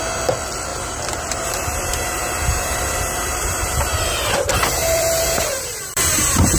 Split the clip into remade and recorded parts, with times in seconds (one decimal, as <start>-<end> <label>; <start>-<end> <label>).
0.0-0.7 recorded; 0.7-4.3 remade; 4.3-4.8 recorded; 4.8-6.0 remade; 6.0-6.6 recorded